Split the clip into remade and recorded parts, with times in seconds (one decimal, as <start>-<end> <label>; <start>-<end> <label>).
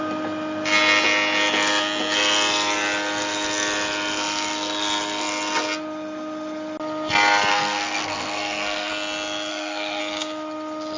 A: 0.0-7.5 recorded; 7.5-8.9 remade; 8.9-9.5 recorded; 9.5-10.0 remade; 10.0-11.0 recorded